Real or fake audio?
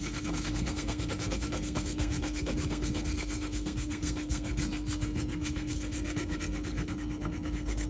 fake